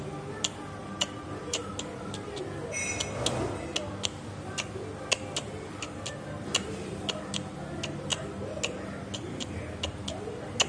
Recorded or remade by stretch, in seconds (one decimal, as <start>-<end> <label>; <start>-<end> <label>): 0.0-0.8 recorded; 0.8-1.7 remade; 1.7-10.7 recorded